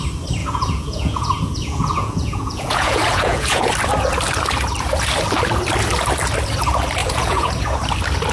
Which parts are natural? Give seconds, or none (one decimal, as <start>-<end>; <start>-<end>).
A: 0.0-0.4; 3.7-7.0; 7.5-8.3